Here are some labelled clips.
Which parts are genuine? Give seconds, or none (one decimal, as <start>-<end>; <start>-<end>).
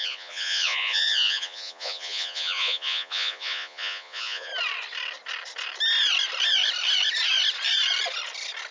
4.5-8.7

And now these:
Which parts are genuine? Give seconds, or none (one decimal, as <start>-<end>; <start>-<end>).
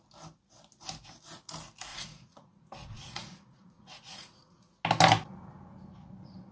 0.0-1.9; 4.8-6.5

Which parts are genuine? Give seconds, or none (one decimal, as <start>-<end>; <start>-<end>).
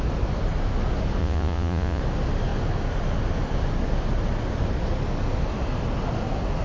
0.0-1.2; 2.0-6.6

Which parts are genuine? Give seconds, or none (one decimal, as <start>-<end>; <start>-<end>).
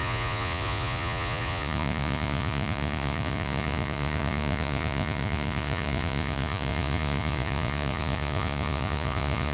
none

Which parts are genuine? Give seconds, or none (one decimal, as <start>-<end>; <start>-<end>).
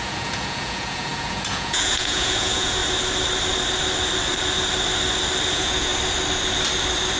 2.8-5.5; 5.9-7.2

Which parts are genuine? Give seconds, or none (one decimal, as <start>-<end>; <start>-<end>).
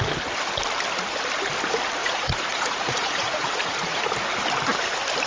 0.0-2.0; 4.0-5.3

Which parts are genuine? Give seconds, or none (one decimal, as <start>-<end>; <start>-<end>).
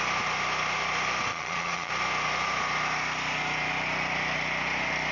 0.0-1.3; 1.9-5.1